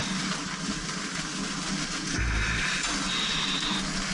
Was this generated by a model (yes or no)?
no